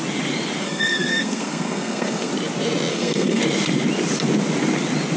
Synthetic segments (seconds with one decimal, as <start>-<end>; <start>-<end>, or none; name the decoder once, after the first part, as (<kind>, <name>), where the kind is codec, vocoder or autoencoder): 0.6-2.3 (codec, SNAC); 2.9-3.4